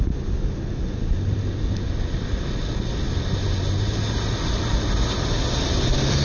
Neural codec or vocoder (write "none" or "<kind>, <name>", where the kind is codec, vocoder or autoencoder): none